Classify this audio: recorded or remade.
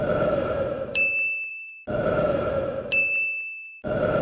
remade